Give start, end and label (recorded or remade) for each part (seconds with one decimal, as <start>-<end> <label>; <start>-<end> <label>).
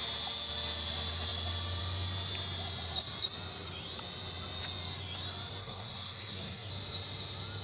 0.0-5.6 recorded; 5.6-6.7 remade; 6.7-7.6 recorded